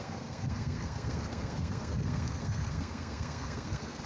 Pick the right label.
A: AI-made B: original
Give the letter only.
A